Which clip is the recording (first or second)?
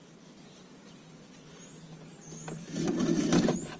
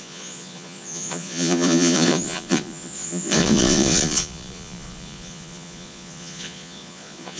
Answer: first